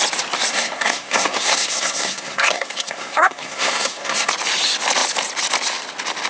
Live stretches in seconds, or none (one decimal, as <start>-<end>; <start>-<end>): 0.0-0.5; 4.3-6.3